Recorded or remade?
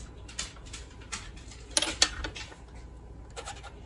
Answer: recorded